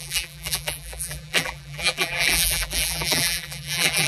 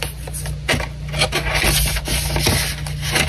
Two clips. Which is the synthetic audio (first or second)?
first